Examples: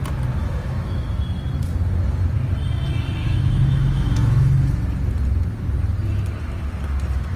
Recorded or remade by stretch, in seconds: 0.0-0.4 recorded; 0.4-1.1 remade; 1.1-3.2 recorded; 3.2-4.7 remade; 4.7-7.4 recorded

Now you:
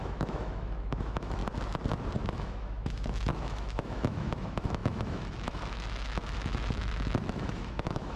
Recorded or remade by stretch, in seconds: 0.0-1.4 remade; 1.4-2.3 recorded; 2.3-8.2 remade

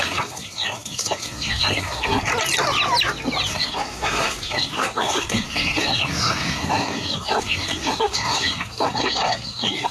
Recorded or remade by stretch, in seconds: 0.0-2.3 remade; 2.3-3.5 recorded; 3.5-9.9 remade

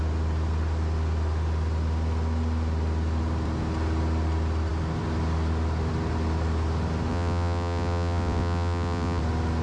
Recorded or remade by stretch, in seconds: 0.0-7.1 recorded; 7.1-9.2 remade; 9.2-9.6 recorded

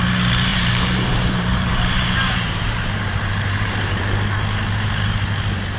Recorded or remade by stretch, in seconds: 0.0-0.5 recorded; 0.5-4.0 remade; 4.0-5.8 recorded

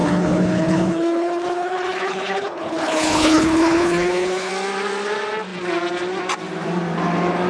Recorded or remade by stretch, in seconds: 0.0-4.5 remade; 4.5-7.5 recorded